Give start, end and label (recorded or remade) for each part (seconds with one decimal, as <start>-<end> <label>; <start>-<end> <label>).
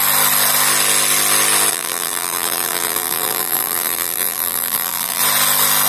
0.0-1.7 recorded; 1.7-5.2 remade; 5.2-5.9 recorded